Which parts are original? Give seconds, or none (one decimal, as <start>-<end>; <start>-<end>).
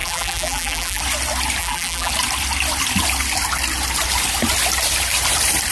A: 1.0-1.6; 2.1-5.7